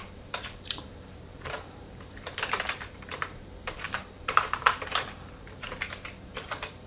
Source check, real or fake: fake